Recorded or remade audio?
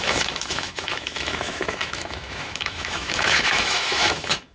remade